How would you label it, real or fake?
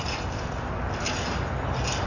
real